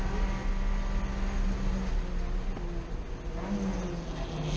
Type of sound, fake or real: real